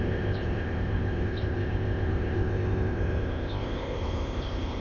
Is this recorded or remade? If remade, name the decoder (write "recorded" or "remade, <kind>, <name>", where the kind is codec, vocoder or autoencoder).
remade, codec, ZipCodec